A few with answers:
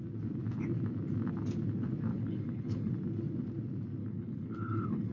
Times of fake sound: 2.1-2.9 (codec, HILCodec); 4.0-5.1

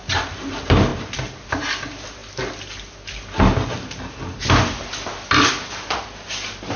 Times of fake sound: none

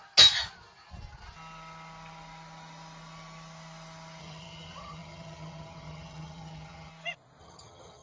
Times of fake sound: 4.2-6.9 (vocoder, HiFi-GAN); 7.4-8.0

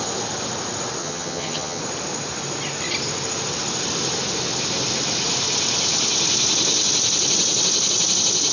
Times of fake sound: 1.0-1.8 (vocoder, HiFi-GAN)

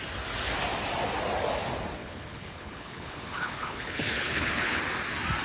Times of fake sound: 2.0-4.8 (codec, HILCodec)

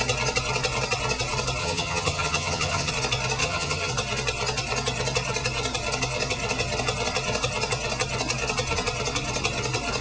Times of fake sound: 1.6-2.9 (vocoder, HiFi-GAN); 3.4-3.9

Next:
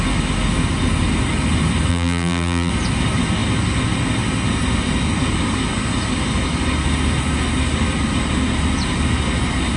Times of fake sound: 1.9-2.7 (vocoder, BigVGAN v2)

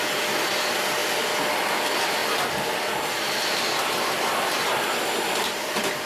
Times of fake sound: none